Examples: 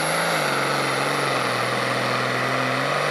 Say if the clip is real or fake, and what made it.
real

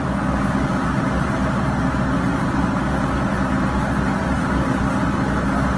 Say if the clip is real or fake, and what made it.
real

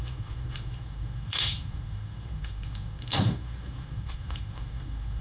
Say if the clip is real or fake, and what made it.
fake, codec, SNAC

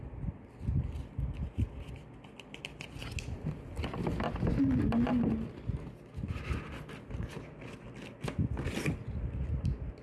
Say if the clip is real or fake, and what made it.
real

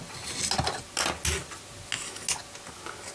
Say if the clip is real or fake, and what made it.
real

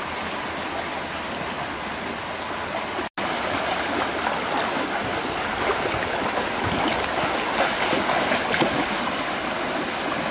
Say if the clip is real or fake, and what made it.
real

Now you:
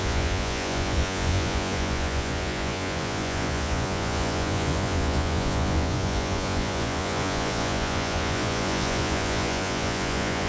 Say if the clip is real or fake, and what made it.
fake, vocoder, Vocos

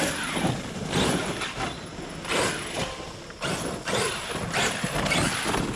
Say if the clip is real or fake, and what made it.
real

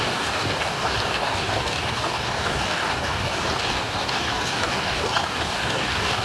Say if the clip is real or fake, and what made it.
fake, codec, DAC